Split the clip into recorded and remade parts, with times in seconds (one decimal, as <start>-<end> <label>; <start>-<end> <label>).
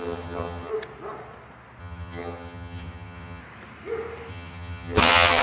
0.0-0.7 remade; 0.7-1.8 recorded; 1.8-3.4 remade; 3.4-4.3 recorded; 4.3-5.4 remade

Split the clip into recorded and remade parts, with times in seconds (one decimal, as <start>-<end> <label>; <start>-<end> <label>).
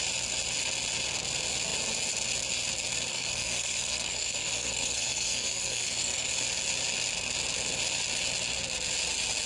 0.0-3.1 recorded; 3.1-6.3 remade; 6.3-9.5 recorded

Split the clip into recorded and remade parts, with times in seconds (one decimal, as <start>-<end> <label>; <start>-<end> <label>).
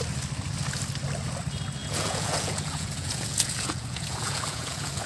0.0-1.8 recorded; 1.8-5.1 remade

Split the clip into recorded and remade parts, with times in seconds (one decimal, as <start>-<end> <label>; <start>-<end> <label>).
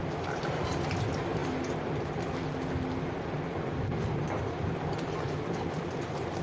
0.0-6.4 recorded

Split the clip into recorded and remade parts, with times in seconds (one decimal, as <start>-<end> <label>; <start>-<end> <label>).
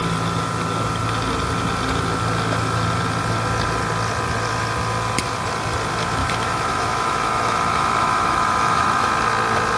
0.0-6.2 recorded; 6.2-9.1 remade; 9.1-9.8 recorded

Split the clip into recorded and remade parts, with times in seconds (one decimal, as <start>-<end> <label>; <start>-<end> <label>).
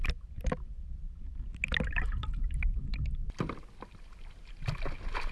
0.0-5.3 recorded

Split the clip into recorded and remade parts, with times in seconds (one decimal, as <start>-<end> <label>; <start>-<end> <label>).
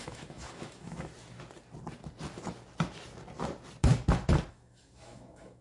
0.0-1.1 remade; 1.1-4.5 recorded; 4.5-5.6 remade